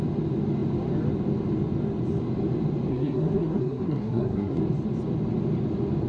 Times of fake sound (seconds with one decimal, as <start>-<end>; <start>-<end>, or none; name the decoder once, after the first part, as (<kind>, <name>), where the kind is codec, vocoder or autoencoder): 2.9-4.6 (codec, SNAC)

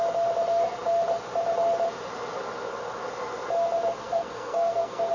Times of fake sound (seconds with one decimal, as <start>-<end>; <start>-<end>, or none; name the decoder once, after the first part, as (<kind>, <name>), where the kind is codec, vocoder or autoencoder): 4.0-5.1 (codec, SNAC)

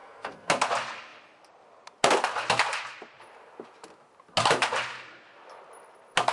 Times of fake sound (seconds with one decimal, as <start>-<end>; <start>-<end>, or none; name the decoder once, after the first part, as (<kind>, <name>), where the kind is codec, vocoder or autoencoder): 0.0-0.5 (codec, SNAC)

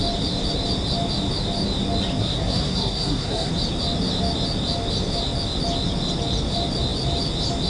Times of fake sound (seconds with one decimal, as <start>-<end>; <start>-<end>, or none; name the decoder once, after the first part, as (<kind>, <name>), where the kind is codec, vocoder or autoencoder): 2.2-3.5 (codec, SNAC)

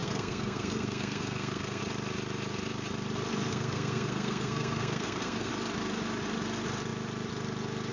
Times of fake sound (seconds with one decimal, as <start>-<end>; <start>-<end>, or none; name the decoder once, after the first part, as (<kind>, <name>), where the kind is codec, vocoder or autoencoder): 0.0-1.8 (codec, SNAC); 3.5-5.5